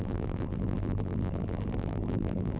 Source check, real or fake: fake